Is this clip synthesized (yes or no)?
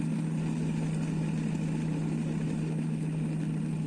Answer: no